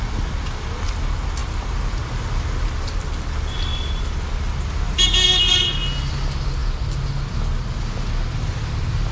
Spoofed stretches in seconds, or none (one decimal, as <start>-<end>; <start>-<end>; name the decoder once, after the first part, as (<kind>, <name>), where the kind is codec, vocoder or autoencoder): none